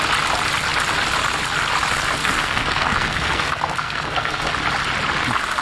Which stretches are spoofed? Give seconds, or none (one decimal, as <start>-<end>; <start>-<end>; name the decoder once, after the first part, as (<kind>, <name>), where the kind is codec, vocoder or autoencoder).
2.2-4.5 (codec, SNAC)